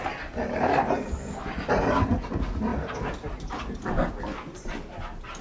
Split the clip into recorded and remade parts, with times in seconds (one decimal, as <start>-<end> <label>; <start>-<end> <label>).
0.0-5.4 recorded